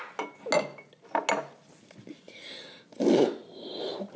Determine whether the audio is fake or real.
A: real